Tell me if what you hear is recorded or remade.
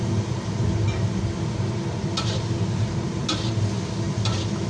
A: recorded